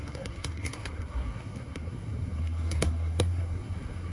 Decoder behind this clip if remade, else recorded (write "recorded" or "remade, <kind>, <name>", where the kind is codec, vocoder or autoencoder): remade, codec, SNAC